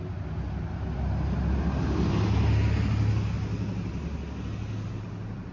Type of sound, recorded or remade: recorded